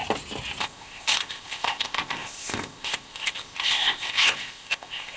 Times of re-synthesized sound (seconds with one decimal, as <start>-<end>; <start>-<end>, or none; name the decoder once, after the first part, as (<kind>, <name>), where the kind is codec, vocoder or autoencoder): 0.6-5.2 (codec, ZipCodec)